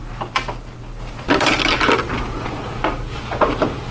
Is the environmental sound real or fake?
real